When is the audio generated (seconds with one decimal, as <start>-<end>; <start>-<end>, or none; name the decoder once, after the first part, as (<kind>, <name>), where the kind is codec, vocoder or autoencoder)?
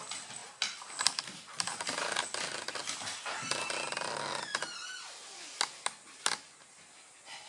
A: none